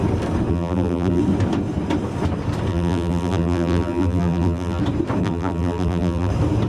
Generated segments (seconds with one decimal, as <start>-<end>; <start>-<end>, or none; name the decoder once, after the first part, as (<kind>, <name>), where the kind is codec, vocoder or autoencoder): 0.5-1.2 (vocoder, BigVGAN v2); 2.7-4.8; 5.2-6.3